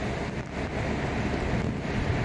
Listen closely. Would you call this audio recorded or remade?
recorded